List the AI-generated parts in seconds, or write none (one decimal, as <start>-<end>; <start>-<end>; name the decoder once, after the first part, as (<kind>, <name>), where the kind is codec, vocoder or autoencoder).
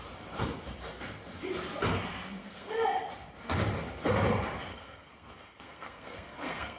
2.4-3.0 (codec, SNAC); 4.7-6.8